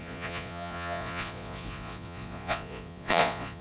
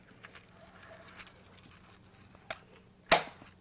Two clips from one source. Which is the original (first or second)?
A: second